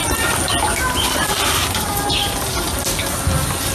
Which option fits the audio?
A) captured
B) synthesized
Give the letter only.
A